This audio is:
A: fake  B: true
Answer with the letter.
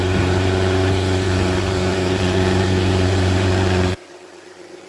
A